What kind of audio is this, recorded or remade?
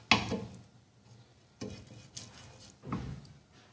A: recorded